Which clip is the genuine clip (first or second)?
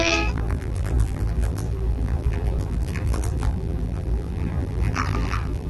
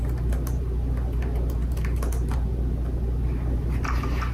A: second